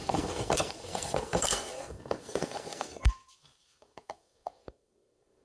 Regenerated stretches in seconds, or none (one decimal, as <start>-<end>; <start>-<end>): 0.0-5.4